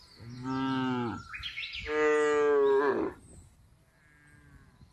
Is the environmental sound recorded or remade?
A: recorded